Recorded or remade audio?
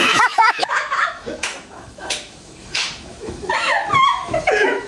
remade